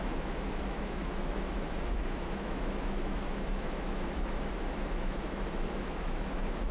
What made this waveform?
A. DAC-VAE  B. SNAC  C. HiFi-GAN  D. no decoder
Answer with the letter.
A